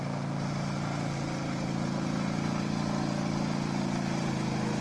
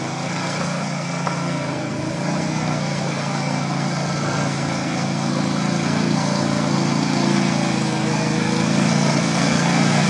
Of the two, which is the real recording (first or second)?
first